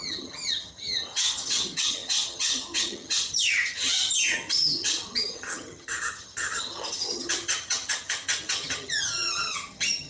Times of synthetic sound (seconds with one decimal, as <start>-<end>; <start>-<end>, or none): 0.0-10.1